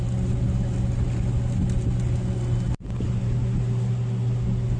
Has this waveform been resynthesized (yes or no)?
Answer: no